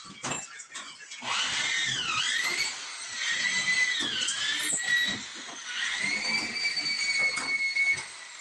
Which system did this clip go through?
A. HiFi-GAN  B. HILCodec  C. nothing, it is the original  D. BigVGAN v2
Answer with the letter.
C